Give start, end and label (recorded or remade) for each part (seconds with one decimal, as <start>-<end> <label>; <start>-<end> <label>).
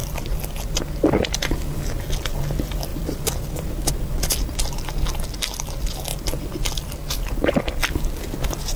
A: 0.0-2.9 recorded; 2.9-3.9 remade; 3.9-6.1 recorded; 6.1-7.7 remade; 7.7-8.8 recorded